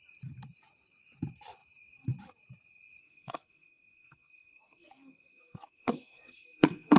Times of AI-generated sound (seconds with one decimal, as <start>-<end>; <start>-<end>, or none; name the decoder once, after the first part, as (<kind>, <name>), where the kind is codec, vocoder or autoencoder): 3.0-7.0 (codec, SNAC)